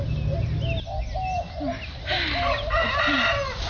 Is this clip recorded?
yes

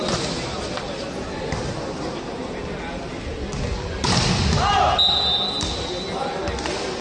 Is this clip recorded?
yes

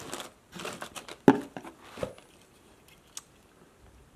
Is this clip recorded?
yes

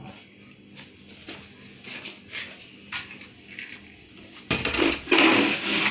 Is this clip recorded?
yes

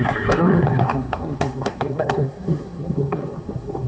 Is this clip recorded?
no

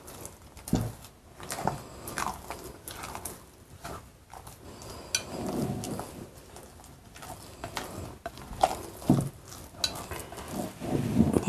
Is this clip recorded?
yes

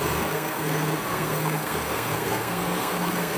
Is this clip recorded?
no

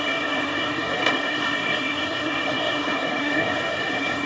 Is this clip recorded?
no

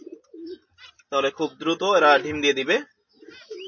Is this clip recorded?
yes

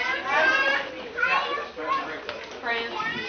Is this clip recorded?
yes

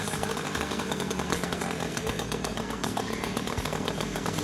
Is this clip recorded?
no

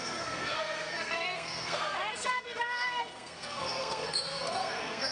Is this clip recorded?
no